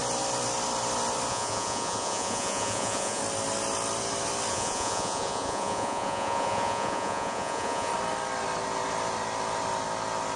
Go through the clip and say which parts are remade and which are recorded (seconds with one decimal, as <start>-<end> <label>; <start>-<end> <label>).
0.0-1.3 recorded; 1.3-3.2 remade; 3.2-4.5 recorded; 4.5-7.9 remade; 7.9-10.4 recorded